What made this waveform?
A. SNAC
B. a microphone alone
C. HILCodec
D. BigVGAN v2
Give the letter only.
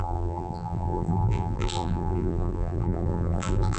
D